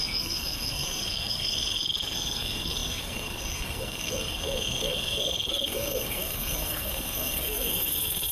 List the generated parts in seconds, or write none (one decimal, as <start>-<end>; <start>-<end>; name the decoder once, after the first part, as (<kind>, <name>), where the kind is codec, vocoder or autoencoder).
0.0-8.3 (codec, SNAC)